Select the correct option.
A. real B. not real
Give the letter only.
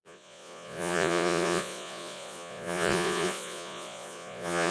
B